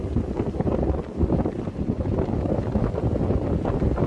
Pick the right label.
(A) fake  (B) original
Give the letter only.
B